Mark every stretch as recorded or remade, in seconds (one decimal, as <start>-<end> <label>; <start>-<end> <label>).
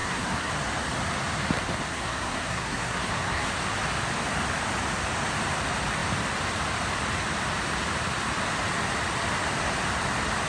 0.0-0.5 remade; 0.5-1.9 recorded; 1.9-3.5 remade; 3.5-10.5 recorded